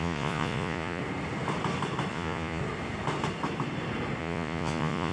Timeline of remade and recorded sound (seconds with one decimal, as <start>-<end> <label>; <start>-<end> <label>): 0.0-1.0 remade; 1.0-2.1 recorded; 2.1-2.6 remade; 2.6-4.2 recorded; 4.2-5.1 remade